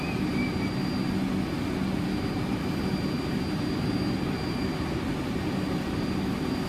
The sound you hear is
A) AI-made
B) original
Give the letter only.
B